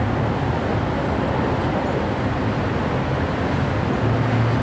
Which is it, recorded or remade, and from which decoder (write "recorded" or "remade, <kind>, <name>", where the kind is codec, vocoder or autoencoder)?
recorded